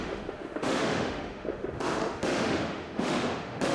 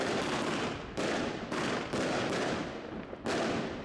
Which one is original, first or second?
second